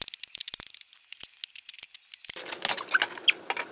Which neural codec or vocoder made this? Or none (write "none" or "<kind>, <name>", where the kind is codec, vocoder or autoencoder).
none